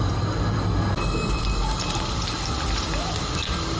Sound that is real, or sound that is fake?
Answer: fake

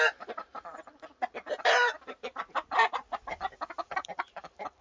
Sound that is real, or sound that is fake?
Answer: fake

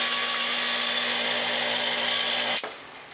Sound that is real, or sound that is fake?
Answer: real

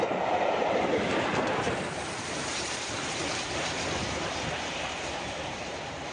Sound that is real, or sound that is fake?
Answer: fake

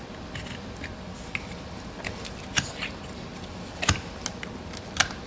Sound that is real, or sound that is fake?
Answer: real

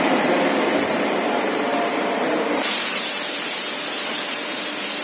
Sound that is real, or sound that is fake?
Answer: fake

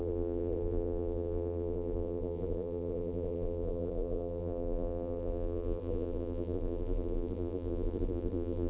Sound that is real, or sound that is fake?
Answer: fake